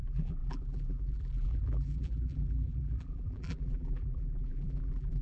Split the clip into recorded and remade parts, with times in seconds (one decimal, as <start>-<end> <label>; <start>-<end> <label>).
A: 0.0-5.2 remade